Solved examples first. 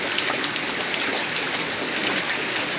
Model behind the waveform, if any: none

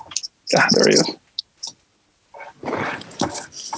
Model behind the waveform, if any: none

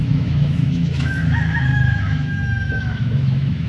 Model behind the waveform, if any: autoencoder, DAC-VAE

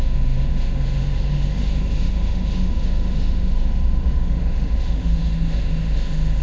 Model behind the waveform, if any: autoencoder, DAC-VAE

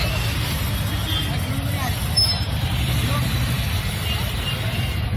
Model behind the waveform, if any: none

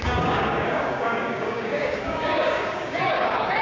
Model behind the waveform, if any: codec, DAC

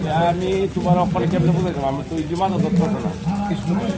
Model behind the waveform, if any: none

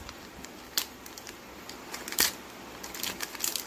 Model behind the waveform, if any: vocoder, BigVGAN v2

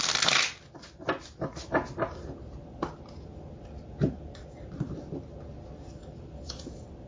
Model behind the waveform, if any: none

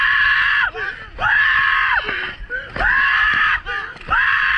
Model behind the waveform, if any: none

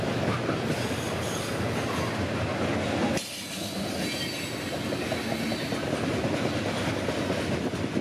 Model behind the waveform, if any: none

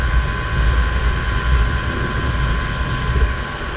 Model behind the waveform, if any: none